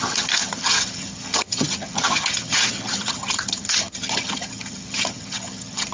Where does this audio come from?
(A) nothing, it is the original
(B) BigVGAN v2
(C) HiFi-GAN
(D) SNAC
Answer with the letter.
C